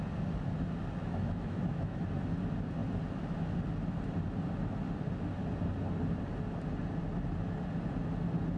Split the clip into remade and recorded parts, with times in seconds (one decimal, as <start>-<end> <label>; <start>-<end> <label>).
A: 0.0-1.0 recorded; 1.0-2.0 remade; 2.0-8.6 recorded